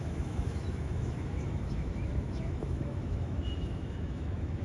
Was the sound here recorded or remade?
remade